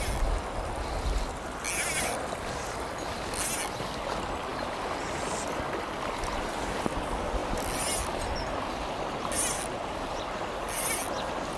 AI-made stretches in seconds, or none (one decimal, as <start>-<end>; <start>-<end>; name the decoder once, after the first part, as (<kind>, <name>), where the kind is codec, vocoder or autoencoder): none